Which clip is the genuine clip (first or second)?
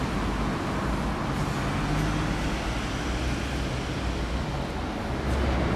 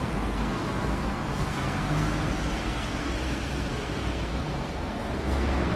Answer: first